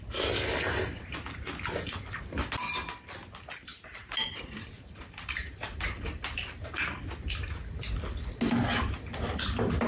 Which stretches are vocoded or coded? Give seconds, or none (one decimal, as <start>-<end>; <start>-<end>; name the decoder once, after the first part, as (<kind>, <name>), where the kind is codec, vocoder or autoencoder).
0.8-1.5 (vocoder, BigVGAN v2); 3.7-7.0